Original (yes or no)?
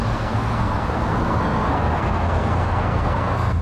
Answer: no